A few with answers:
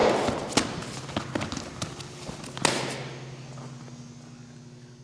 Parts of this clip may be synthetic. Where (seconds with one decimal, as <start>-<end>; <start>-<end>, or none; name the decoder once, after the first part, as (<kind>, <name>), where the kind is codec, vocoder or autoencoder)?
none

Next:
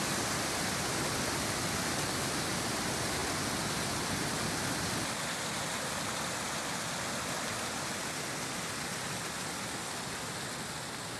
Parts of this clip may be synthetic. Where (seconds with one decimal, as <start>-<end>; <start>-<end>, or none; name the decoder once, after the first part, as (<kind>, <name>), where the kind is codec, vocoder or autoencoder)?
none

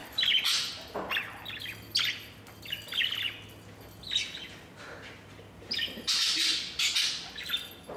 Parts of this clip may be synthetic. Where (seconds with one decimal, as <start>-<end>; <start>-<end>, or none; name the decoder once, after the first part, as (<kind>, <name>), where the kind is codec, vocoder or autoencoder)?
none

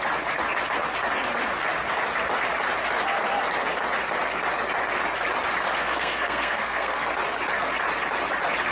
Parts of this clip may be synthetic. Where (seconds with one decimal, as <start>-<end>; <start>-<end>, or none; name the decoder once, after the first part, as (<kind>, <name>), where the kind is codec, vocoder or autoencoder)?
5.8-7.1 (codec, SNAC)

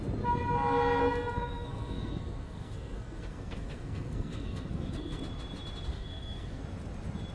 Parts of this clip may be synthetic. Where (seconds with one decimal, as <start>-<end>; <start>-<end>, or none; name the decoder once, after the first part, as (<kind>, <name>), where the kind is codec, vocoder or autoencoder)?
1.0-5.2 (codec, SNAC); 5.9-6.6

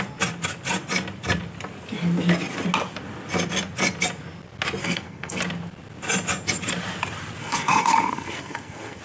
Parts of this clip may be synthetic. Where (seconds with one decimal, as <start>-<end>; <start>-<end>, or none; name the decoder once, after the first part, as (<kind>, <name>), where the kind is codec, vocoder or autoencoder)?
4.8-5.4 (codec, SNAC); 7.4-9.0